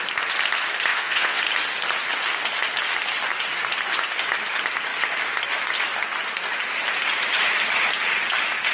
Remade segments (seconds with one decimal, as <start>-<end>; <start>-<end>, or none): 0.9-1.4